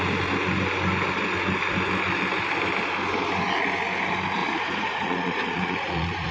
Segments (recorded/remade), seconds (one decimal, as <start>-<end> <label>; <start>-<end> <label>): 0.0-4.4 recorded; 4.4-6.3 remade